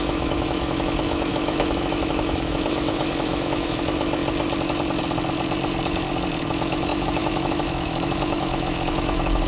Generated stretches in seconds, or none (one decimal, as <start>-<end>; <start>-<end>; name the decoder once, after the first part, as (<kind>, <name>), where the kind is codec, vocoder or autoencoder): 0.0-4.2 (autoencoder, DAC-VAE); 6.4-9.5